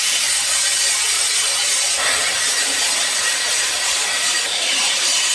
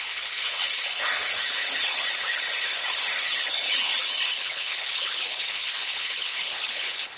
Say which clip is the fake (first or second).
second